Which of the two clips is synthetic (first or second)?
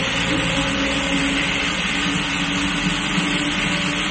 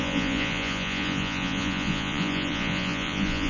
second